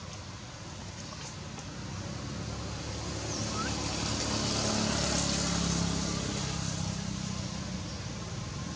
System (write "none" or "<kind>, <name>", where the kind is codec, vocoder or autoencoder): none